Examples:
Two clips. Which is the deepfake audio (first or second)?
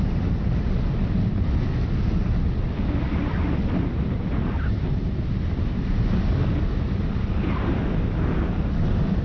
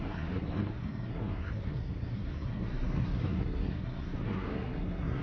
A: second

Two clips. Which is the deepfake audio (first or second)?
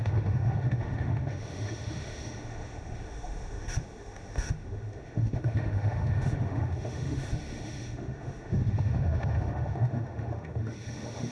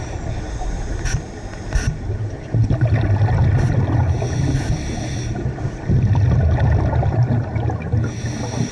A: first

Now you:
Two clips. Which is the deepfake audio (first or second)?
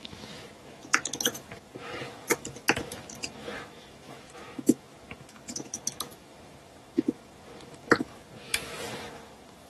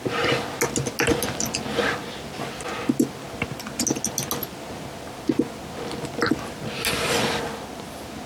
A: first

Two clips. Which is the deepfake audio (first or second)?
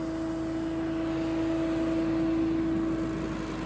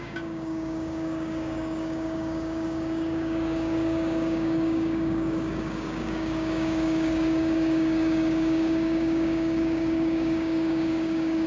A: second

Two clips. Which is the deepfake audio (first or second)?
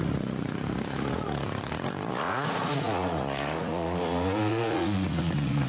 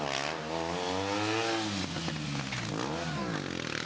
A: first